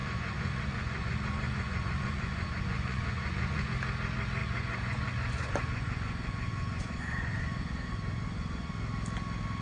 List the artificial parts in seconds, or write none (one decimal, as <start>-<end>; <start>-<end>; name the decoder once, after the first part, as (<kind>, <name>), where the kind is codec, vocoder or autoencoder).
0.0-3.7 (vocoder, Vocos); 4.4-8.7